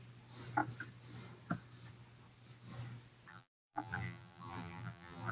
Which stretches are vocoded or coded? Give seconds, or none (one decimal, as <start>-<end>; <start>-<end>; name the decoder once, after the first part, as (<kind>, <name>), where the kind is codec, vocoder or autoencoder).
3.3-5.3 (vocoder, BigVGAN v2)